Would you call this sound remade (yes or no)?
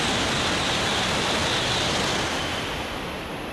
no